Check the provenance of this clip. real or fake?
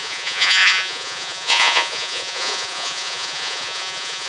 fake